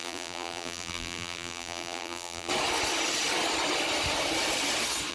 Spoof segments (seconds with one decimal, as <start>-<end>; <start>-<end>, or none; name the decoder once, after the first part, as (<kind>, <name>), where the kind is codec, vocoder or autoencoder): 0.0-2.5 (vocoder, BigVGAN v2)